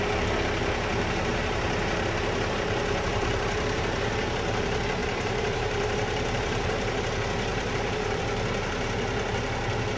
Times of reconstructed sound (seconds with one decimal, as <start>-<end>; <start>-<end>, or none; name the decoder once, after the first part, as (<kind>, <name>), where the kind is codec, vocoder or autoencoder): 1.3-4.1 (vocoder, BigVGAN v2); 5.0-6.9; 7.5-8.2